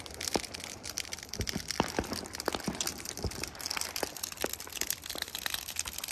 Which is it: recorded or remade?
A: recorded